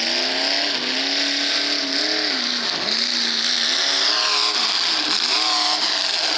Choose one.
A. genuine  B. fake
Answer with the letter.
A